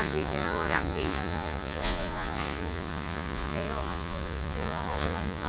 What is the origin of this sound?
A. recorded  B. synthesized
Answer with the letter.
B